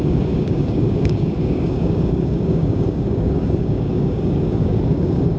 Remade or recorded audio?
remade